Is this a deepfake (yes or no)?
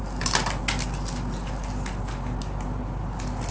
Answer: no